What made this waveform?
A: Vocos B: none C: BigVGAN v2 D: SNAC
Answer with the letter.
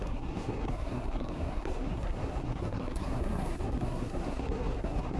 D